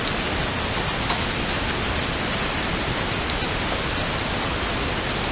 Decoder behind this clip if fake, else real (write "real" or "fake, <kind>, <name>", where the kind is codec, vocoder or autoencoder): real